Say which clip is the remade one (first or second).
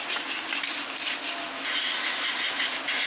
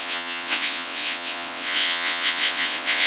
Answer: second